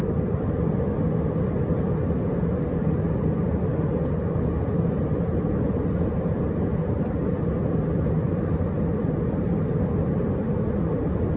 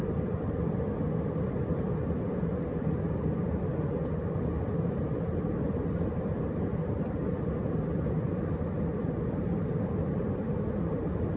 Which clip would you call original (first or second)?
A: first